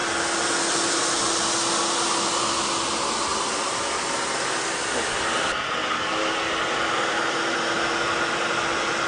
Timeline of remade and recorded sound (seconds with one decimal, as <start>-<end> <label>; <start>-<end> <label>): 0.0-5.8 recorded; 5.8-6.5 remade; 6.5-9.1 recorded